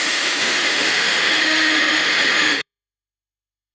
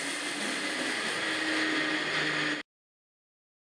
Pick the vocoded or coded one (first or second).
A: first